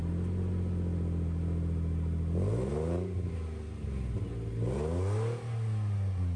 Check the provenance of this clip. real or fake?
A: real